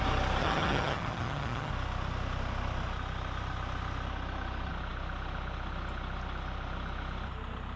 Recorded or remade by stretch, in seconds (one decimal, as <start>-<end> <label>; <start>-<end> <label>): 0.0-0.4 recorded; 0.4-1.7 remade; 1.7-7.8 recorded